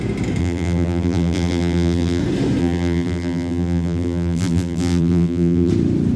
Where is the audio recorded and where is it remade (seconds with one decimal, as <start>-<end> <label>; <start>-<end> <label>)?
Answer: 0.0-0.4 recorded; 0.4-2.2 remade; 2.2-2.6 recorded; 2.6-5.7 remade; 5.7-6.2 recorded